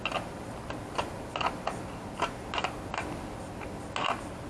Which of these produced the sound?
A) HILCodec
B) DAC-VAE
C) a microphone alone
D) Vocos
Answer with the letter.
C